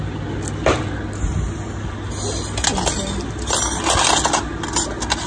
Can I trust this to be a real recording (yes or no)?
yes